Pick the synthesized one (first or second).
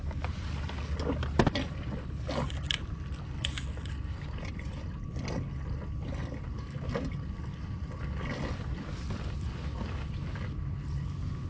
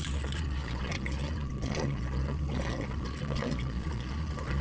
second